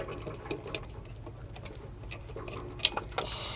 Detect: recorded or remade recorded